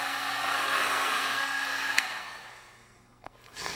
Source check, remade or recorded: remade